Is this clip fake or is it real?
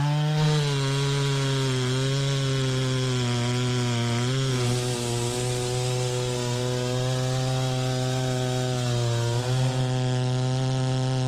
real